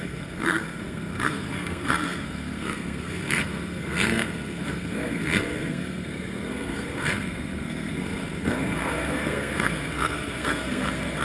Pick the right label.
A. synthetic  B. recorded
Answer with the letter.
A